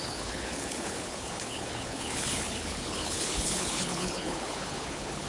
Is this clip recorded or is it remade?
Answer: remade